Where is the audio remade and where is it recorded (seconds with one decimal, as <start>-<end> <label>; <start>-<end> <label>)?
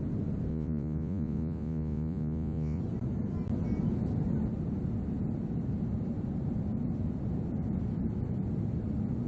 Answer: 0.0-0.5 recorded; 0.5-2.8 remade; 2.8-9.3 recorded